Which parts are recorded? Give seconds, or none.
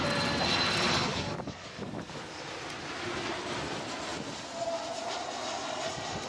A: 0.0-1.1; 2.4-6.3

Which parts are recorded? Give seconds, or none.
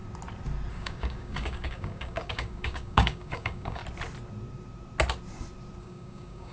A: 0.0-0.7; 3.8-5.8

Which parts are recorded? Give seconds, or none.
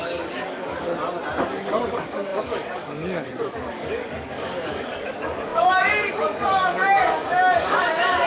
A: 0.9-1.4